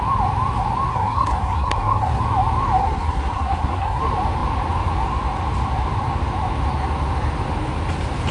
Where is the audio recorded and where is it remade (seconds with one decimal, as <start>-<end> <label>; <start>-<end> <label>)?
0.0-0.9 recorded; 0.9-2.2 remade; 2.2-2.8 recorded; 2.8-4.0 remade; 4.0-8.3 recorded